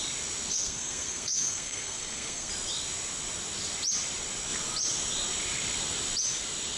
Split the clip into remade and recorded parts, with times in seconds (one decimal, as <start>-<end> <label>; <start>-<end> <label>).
0.0-0.5 recorded; 0.5-2.5 remade; 2.5-6.8 recorded